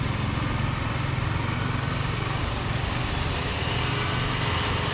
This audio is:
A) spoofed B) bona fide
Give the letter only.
B